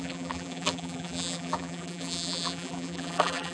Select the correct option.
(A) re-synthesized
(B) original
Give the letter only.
A